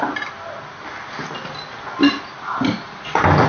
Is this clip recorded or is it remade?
recorded